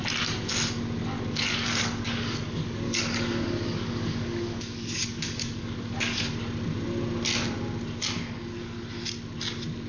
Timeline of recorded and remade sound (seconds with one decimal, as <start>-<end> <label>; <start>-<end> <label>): 0.0-1.0 recorded; 1.0-6.2 remade; 6.2-9.9 recorded